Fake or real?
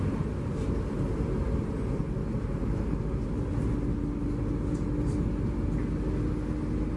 real